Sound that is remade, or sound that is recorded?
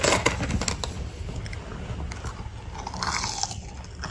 recorded